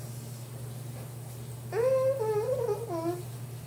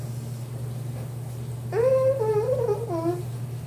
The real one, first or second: first